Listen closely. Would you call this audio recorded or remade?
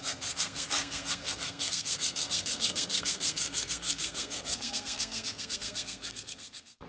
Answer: remade